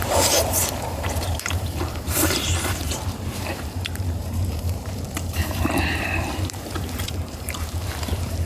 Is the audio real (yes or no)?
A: no